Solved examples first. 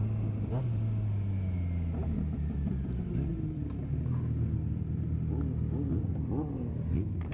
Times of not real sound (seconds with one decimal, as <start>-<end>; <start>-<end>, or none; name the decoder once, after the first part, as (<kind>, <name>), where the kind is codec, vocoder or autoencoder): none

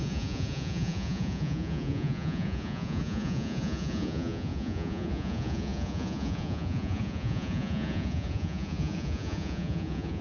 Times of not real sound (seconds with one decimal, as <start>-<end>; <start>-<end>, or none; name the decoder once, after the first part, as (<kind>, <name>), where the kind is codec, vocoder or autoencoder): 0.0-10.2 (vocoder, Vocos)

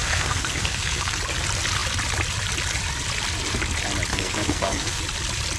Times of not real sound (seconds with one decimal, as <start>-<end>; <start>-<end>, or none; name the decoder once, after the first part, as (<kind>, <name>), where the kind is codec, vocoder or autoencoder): 0.0-1.2 (codec, SNAC); 4.1-5.0